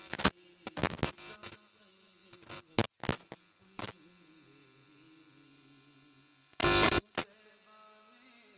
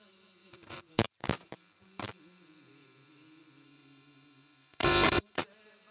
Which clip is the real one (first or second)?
first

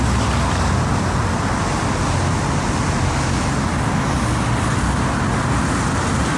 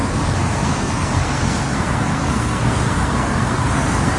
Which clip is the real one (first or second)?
first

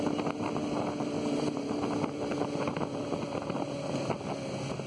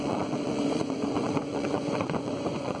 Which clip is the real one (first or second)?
first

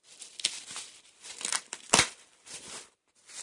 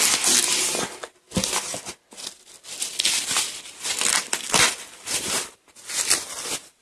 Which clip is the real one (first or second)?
second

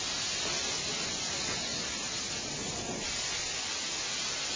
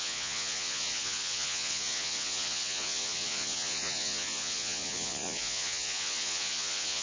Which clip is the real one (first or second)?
first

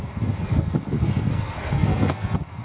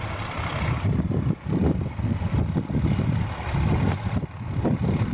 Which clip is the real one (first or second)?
second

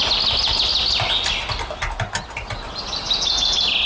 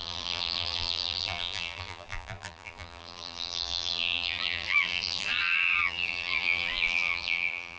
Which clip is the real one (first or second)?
first